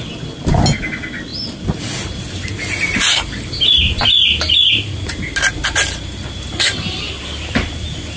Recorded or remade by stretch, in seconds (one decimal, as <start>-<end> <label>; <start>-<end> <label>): 0.0-8.2 recorded